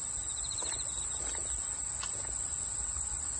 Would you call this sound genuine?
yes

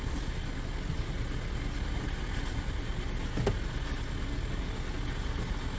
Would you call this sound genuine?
yes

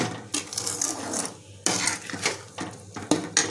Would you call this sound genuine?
yes